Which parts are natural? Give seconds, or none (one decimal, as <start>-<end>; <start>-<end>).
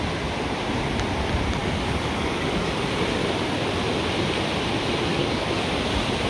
0.0-1.6; 2.8-5.2; 5.7-6.3